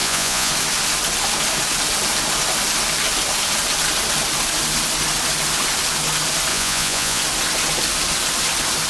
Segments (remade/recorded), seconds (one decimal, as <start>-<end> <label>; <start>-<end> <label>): 0.0-0.5 remade; 0.5-6.5 recorded; 6.5-7.2 remade; 7.2-8.9 recorded